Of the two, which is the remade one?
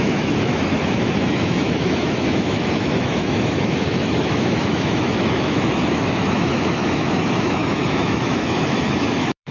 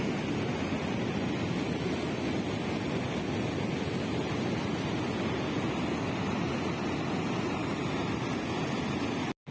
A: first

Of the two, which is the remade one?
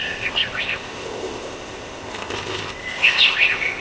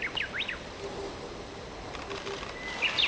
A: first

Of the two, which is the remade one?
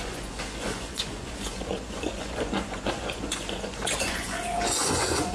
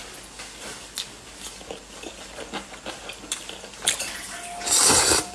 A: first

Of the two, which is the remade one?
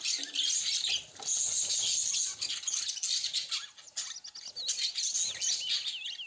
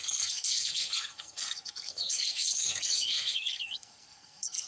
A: second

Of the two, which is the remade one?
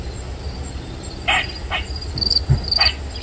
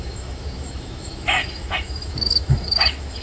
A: second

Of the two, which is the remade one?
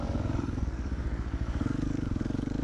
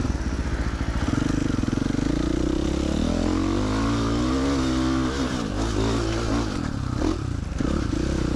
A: first